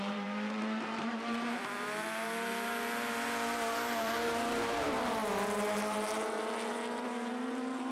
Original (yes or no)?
no